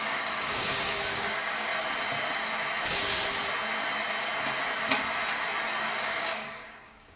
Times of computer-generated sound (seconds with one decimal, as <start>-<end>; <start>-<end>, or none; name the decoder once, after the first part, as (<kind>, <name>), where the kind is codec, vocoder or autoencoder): 0.0-1.7 (codec, DAC); 6.0-7.2